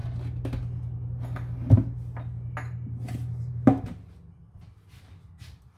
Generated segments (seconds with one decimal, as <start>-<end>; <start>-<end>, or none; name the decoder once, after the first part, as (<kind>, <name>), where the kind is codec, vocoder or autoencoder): none